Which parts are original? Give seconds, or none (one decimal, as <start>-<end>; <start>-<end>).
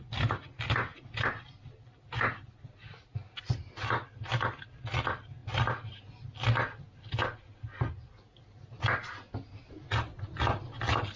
0.0-11.2